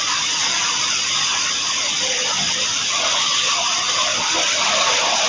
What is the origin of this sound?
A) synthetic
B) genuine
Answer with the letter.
B